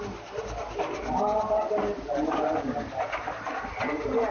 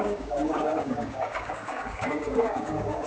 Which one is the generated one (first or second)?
second